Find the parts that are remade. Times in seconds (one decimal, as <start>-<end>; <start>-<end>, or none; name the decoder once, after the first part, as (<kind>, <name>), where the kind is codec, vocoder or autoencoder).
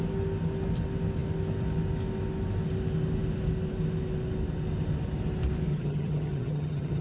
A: 5.7-7.0 (vocoder, HiFi-GAN)